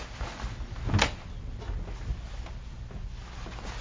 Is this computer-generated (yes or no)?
no